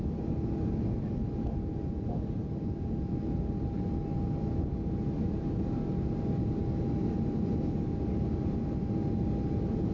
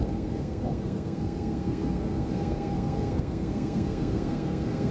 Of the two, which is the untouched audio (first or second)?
first